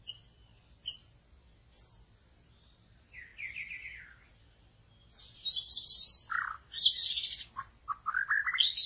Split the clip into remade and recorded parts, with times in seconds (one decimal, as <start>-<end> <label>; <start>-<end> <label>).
0.0-5.2 recorded; 5.2-7.7 remade; 7.7-8.9 recorded